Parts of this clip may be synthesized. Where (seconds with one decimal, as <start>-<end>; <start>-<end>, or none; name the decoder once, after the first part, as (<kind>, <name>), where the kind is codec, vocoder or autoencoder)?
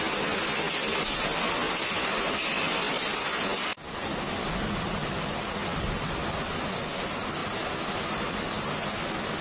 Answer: 5.6-6.1 (vocoder, BigVGAN v2); 7.4-8.2